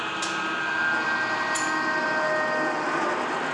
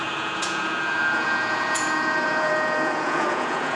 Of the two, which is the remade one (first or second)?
second